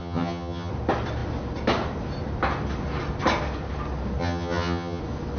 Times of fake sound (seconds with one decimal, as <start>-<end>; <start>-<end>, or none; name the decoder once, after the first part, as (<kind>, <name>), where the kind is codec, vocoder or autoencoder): 0.0-0.7 (vocoder, HiFi-GAN); 4.2-5.0